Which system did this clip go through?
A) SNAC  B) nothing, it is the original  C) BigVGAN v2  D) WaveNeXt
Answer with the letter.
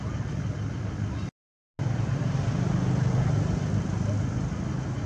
B